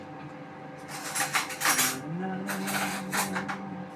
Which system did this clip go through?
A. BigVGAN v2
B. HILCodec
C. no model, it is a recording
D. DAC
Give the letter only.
C